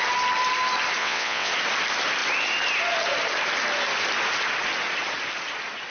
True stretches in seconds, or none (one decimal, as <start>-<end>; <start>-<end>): 0.0-1.0; 1.5-5.9